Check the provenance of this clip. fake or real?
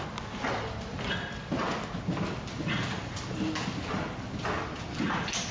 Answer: real